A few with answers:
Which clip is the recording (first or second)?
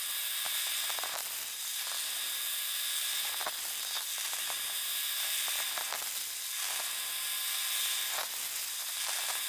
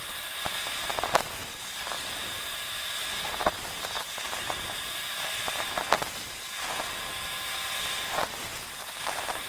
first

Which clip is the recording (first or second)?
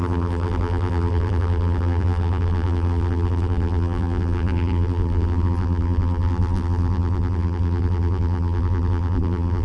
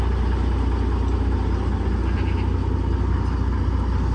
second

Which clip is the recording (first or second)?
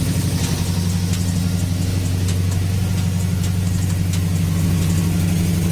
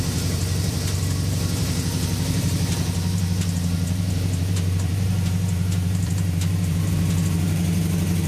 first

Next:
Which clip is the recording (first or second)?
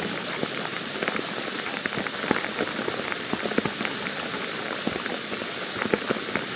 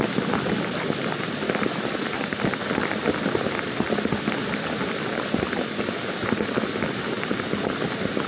second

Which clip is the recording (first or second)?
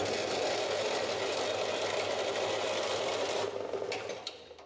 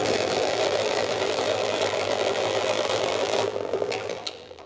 first